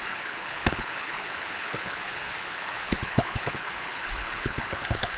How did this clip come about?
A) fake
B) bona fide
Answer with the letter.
A